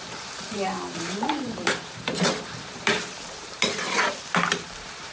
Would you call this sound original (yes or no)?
no